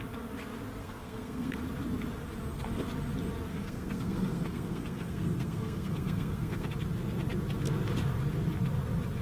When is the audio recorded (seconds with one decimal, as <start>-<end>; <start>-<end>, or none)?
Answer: 0.0-0.8; 1.6-3.5; 6.7-9.2